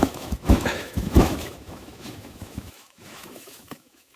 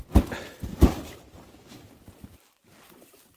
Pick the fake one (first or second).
first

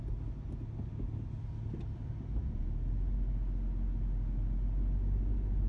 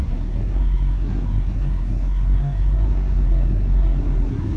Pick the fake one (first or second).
second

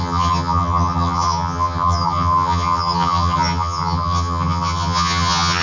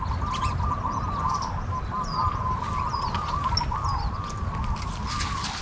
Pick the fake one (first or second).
first